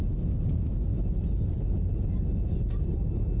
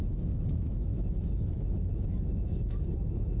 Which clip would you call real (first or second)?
first